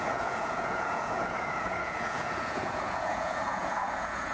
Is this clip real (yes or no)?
no